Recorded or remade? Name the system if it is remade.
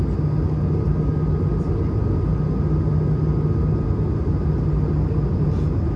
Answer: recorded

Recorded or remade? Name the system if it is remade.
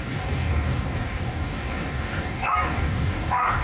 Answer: remade, codec, DAC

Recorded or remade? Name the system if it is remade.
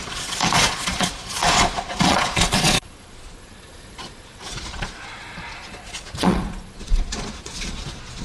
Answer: remade, vocoder, Vocos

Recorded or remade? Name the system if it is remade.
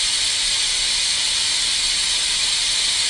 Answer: recorded